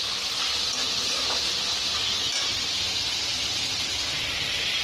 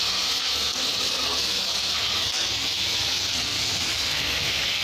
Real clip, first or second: first